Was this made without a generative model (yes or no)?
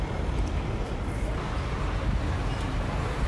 yes